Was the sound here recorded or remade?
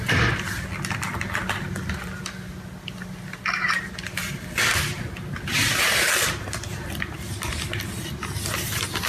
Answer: recorded